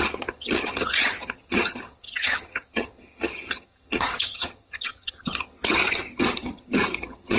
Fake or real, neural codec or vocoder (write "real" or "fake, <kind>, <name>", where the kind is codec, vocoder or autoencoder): fake, vocoder, HiFi-GAN